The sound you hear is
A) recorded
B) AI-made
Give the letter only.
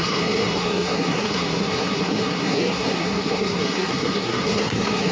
B